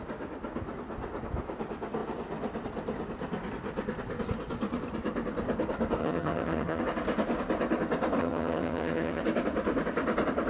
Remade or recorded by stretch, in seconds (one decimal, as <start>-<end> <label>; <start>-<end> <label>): 0.0-6.0 recorded; 6.0-6.8 remade; 6.8-8.2 recorded; 8.2-9.2 remade; 9.2-10.5 recorded